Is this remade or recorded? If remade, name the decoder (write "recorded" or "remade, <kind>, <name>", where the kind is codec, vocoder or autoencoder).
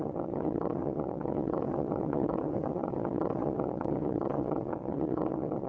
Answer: remade, vocoder, WaveNeXt